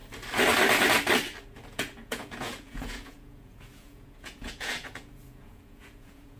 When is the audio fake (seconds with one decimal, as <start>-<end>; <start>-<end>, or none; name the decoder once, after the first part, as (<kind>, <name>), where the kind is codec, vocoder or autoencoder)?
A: 1.5-6.4 (vocoder, Vocos)